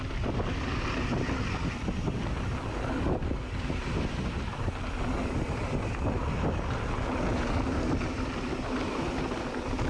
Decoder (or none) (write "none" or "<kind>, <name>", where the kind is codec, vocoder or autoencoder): none